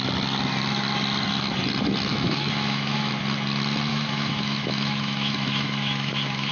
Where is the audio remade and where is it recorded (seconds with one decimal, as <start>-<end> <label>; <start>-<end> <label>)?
0.0-2.1 recorded; 2.1-3.1 remade; 3.1-3.9 recorded; 3.9-6.5 remade